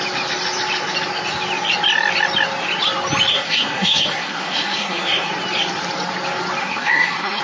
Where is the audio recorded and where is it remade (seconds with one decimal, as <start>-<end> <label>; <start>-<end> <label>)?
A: 0.0-3.3 recorded; 3.3-5.3 remade; 5.3-6.6 recorded; 6.6-7.4 remade